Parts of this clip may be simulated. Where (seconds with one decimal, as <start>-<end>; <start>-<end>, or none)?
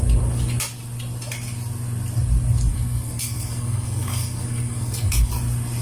2.7-5.3